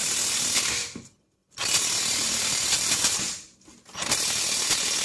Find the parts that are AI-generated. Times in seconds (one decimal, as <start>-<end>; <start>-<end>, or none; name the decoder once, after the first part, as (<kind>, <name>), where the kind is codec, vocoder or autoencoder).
0.0-0.7 (vocoder, BigVGAN v2); 1.4-4.4